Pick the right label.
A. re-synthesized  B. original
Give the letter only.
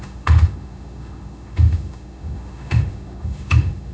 A